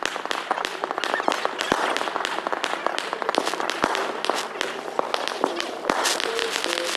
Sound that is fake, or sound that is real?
real